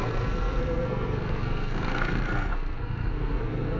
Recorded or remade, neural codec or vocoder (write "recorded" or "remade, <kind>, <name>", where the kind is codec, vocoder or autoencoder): remade, codec, SNAC